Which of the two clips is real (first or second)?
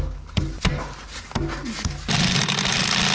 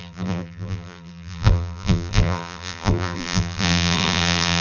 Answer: first